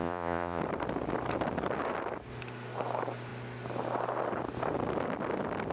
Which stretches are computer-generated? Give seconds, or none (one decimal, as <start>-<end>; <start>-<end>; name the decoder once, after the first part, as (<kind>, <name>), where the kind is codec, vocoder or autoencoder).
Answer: 0.0-0.6 (vocoder, Vocos)